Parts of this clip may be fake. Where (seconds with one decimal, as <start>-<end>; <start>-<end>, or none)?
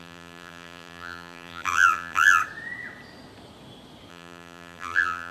0.0-2.4; 4.1-5.3